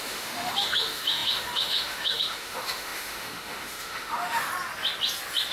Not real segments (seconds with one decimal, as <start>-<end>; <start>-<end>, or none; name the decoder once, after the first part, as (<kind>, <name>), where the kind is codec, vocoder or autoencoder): 0.0-4.5 (autoencoder, DAC-VAE)